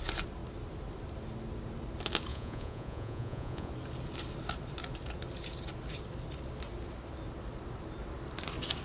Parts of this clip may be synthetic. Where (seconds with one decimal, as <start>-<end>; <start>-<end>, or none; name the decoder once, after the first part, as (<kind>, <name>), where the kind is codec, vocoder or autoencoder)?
2.3-3.7 (vocoder, Vocos)